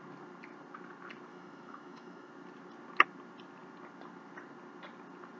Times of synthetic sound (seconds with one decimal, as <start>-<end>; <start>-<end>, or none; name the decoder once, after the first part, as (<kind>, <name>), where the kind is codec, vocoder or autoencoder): 1.3-2.3 (autoencoder, DAC-VAE)